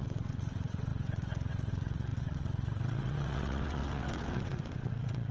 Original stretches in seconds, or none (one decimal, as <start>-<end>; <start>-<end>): none